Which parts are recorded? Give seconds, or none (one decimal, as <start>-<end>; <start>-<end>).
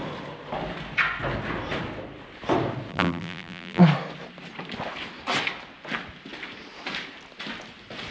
0.0-2.9; 3.8-8.1